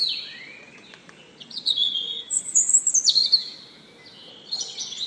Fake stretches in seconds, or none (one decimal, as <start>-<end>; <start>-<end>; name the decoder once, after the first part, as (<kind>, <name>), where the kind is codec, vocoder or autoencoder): 0.0-2.7 (vocoder, Vocos); 4.3-5.1